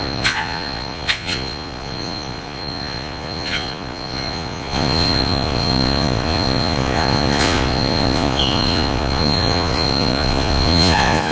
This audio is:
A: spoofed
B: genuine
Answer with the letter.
A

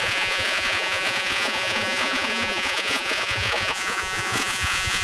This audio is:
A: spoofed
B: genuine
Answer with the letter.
A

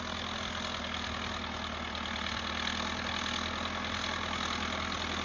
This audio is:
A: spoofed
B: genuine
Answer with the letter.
B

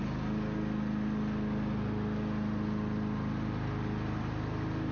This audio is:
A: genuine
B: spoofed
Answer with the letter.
A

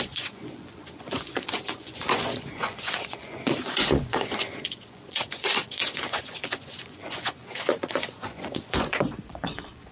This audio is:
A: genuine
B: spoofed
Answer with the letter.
B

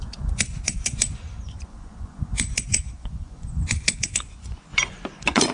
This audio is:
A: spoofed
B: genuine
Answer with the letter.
A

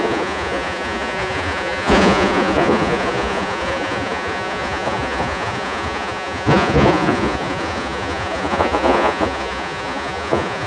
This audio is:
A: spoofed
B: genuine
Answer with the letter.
A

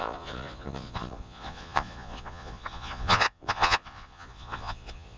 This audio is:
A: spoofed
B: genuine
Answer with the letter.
A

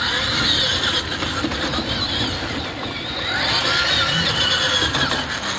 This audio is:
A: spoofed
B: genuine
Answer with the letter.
B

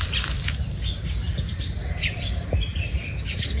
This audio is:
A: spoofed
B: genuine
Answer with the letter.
B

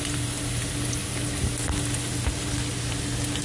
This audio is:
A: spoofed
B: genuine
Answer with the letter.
B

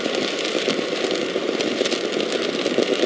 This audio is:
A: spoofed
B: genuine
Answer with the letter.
B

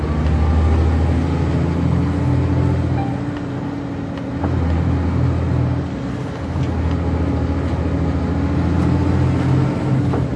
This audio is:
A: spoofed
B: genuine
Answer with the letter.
B